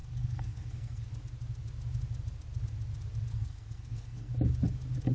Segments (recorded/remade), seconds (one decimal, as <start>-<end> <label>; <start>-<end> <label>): 0.0-1.1 remade; 1.1-3.3 recorded; 3.3-4.3 remade; 4.3-5.1 recorded